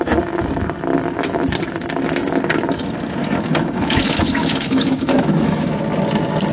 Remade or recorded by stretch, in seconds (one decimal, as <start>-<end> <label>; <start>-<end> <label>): 0.0-3.2 recorded; 3.2-5.7 remade; 5.7-6.5 recorded